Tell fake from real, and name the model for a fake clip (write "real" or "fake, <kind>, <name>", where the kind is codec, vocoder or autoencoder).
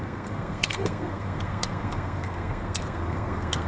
fake, codec, SNAC